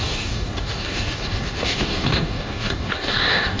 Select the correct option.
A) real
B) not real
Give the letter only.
B